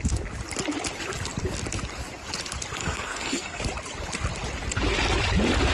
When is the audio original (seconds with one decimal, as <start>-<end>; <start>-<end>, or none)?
0.0-2.8; 3.6-5.7